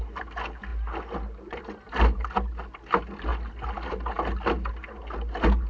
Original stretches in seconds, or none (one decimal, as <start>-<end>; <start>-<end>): 0.0-5.7